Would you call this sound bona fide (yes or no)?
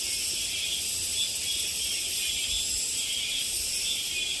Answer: yes